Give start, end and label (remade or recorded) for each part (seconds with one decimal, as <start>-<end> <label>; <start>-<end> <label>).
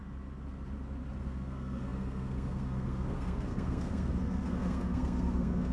0.0-1.2 recorded; 1.2-5.7 remade